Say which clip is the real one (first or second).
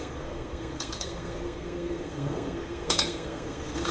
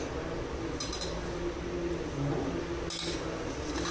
second